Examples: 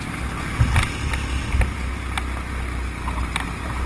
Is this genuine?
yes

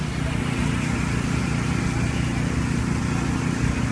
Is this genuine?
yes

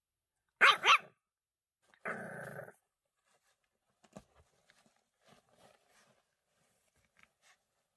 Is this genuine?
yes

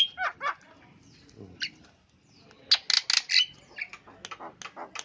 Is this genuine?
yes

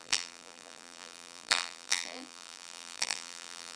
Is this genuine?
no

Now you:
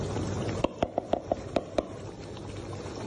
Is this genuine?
yes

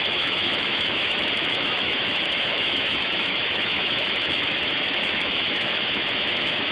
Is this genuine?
no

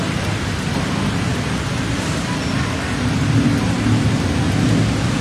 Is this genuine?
yes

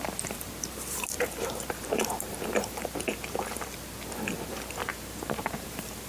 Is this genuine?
no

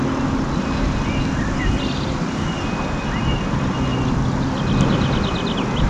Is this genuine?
yes